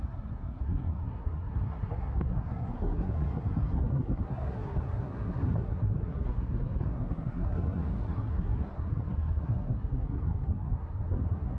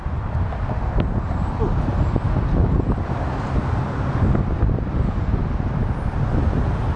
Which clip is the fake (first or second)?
first